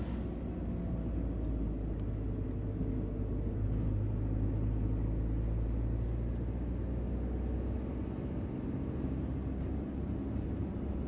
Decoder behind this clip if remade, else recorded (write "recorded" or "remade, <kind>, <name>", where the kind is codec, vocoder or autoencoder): recorded